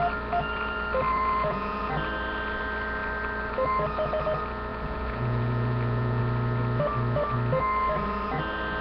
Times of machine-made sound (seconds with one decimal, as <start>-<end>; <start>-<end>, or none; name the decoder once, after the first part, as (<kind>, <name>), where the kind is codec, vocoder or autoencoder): 1.1-1.9 (vocoder, Vocos); 4.7-6.2